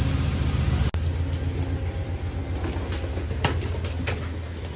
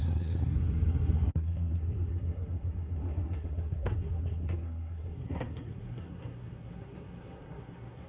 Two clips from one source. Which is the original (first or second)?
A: first